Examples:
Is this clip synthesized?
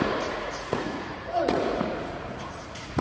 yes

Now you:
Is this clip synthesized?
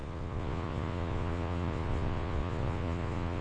yes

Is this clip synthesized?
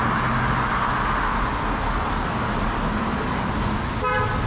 no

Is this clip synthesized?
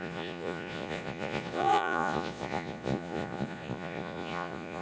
yes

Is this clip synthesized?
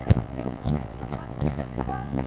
yes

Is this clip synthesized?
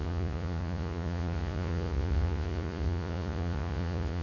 yes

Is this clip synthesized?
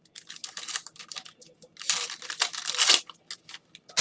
no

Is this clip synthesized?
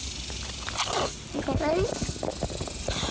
no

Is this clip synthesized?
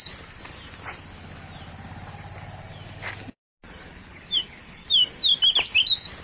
no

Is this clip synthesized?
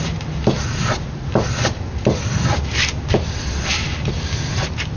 no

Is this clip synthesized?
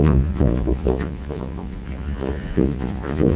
yes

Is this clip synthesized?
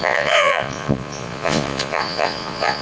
yes